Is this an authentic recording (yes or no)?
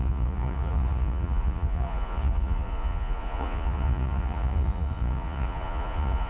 no